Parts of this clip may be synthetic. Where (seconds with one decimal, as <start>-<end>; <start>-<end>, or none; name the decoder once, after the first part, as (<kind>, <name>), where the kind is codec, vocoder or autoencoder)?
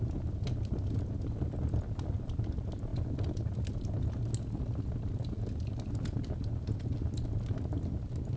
none